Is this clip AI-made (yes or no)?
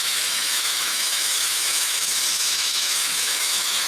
yes